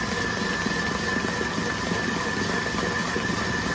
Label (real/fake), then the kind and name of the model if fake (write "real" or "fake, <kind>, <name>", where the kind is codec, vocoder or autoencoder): real